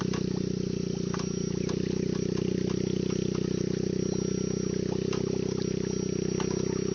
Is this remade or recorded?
recorded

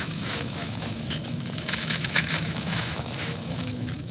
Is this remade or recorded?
remade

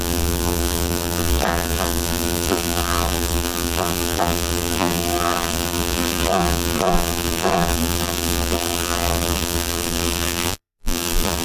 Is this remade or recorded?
remade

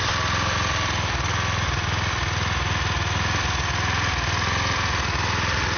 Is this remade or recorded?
recorded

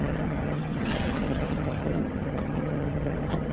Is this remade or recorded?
remade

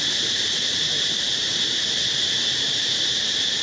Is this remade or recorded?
remade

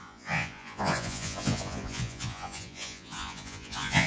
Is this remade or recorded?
remade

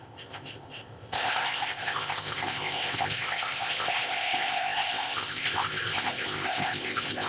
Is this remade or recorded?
remade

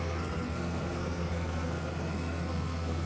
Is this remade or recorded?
remade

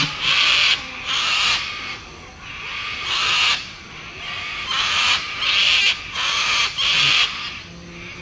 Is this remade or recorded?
recorded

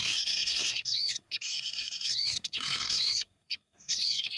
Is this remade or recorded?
remade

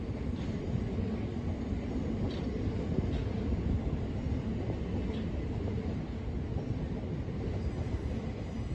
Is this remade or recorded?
recorded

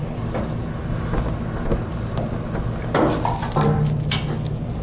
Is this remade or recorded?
recorded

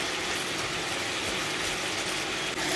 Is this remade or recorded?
recorded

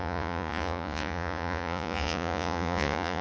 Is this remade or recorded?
remade